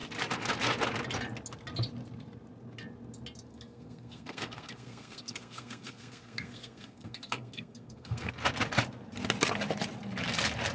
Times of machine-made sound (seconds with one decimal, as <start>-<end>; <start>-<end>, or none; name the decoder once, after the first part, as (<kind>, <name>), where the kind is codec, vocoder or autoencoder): 3.5-8.3 (codec, SNAC)